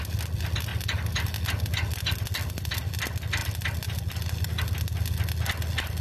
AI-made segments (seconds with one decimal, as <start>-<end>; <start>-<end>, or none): none